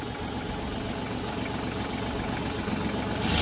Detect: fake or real real